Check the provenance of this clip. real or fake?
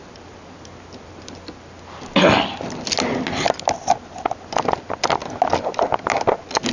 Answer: real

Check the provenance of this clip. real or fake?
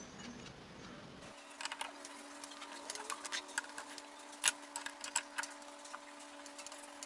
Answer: real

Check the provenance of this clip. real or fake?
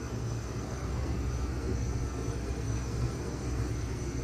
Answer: fake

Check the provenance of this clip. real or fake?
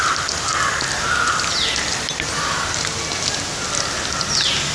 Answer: real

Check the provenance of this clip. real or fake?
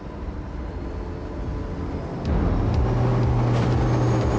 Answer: real